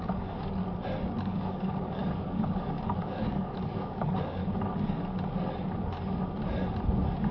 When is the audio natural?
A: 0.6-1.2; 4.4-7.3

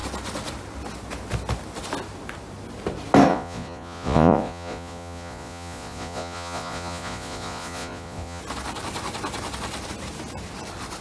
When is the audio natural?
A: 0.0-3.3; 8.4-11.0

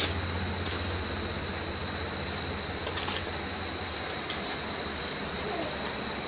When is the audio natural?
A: 0.0-6.3